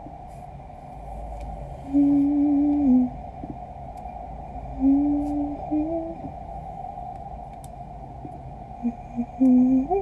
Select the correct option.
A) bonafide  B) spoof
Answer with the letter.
A